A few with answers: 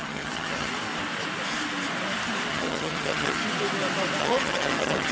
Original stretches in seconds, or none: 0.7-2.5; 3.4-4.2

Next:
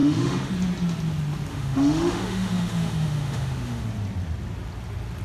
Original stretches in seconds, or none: 0.5-1.5; 3.8-5.2